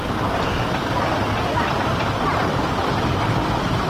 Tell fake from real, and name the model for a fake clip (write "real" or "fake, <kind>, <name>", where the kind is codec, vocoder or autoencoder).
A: real